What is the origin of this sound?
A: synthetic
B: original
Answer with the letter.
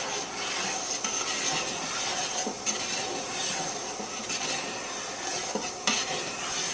B